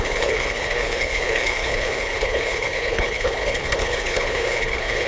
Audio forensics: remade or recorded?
remade